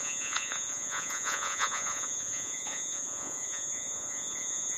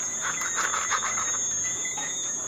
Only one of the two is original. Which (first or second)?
second